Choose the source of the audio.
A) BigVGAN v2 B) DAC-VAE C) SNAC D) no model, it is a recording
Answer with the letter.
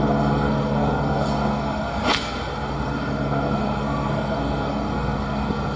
C